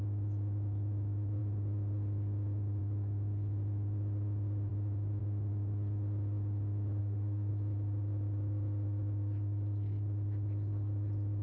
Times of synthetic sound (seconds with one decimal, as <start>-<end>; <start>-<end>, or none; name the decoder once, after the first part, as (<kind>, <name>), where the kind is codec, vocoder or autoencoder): 7.0-7.5 (autoencoder, DAC-VAE)